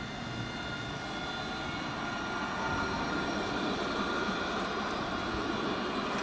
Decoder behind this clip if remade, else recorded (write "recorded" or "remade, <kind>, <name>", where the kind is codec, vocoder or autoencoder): recorded